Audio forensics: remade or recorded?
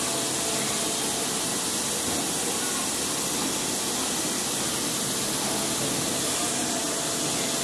recorded